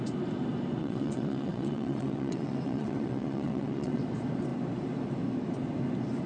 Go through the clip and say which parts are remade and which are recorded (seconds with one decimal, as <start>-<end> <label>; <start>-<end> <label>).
0.0-0.8 recorded; 0.8-4.0 remade; 4.0-6.3 recorded